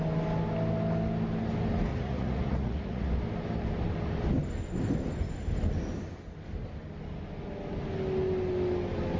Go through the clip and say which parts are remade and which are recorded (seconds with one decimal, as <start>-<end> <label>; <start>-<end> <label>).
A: 0.0-1.9 recorded; 1.9-3.1 remade; 3.1-9.2 recorded